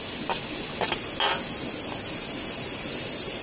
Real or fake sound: real